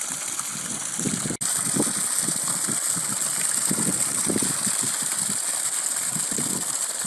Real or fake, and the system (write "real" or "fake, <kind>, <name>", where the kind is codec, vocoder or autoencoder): real